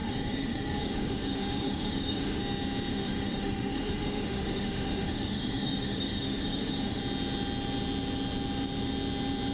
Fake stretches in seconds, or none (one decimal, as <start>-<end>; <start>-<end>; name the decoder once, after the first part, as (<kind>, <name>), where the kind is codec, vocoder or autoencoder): 0.0-2.4 (autoencoder, DAC-VAE); 2.9-7.0